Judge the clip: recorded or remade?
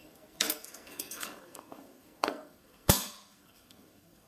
remade